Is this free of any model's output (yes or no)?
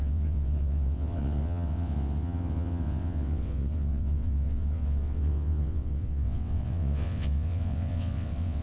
no